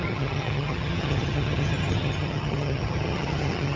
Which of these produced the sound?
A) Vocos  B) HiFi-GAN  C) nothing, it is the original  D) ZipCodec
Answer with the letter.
B